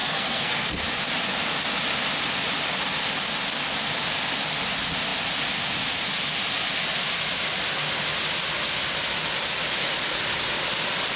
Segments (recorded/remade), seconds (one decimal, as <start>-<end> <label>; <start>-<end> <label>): 0.0-0.8 remade; 0.8-11.2 recorded